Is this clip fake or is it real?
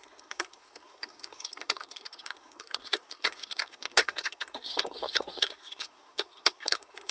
fake